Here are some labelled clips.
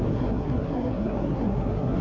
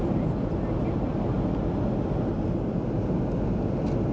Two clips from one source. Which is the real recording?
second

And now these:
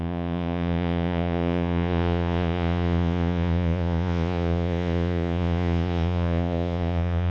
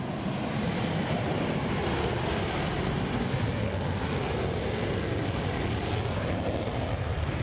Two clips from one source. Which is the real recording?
second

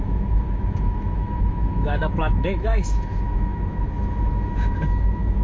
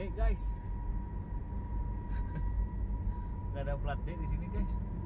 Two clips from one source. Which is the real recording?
second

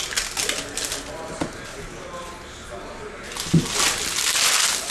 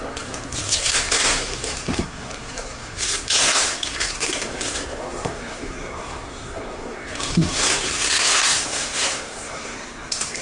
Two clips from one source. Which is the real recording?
first